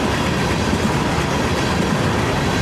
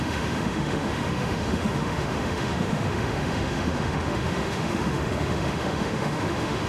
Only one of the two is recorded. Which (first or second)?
first